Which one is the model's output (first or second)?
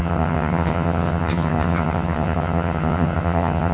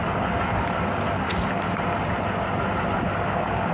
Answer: first